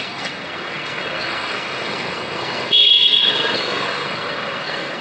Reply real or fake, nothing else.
fake